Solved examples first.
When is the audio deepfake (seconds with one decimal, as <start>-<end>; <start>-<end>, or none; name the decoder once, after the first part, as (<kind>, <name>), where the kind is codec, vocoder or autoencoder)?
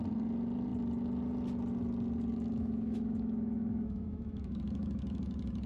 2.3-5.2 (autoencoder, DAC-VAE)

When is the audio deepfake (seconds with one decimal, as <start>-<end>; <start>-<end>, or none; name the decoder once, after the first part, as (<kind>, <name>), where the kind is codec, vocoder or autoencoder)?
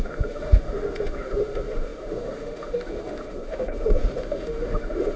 0.0-5.2 (autoencoder, DAC-VAE)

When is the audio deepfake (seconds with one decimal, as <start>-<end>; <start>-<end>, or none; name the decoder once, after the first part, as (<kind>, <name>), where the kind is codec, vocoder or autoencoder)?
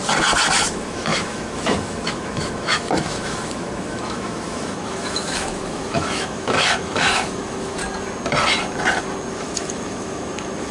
0.5-7.8 (autoencoder, DAC-VAE); 9.3-10.7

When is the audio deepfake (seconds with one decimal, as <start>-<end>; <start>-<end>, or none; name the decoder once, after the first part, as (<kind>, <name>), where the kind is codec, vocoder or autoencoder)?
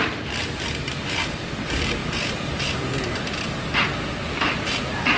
none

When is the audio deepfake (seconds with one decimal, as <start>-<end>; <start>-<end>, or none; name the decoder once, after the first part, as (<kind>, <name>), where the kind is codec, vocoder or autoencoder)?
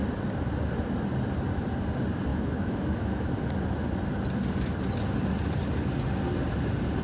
2.3-3.3 (autoencoder, DAC-VAE)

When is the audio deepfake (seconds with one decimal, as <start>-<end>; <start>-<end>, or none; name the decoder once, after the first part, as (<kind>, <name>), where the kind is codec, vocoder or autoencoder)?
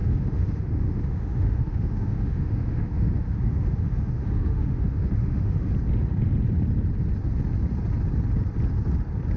0.0-5.7 (autoencoder, DAC-VAE)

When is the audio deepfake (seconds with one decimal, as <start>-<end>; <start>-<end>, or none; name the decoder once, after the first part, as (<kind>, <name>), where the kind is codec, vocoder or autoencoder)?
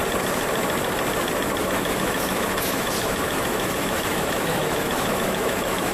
1.6-5.9 (autoencoder, DAC-VAE)